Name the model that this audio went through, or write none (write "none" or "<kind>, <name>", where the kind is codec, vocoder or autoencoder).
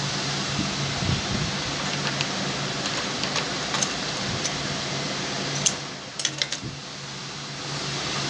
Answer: none